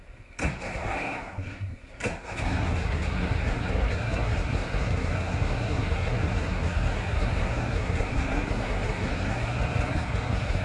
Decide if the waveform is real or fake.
fake